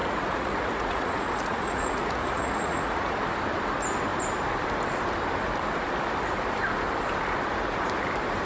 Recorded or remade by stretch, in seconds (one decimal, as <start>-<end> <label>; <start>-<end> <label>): 0.0-3.1 remade; 3.1-8.4 recorded